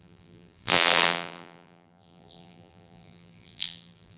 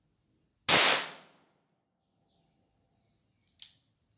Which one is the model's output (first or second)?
first